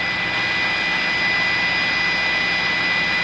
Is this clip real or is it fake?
real